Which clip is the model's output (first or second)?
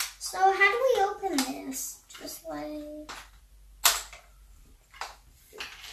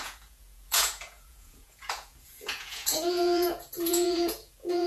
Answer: second